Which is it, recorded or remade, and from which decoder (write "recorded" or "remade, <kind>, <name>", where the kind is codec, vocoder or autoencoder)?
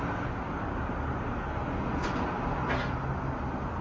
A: recorded